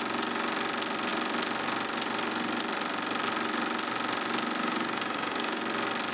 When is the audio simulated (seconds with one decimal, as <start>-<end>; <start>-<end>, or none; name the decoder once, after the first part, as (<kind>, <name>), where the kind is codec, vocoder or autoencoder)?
4.6-5.6 (codec, DAC)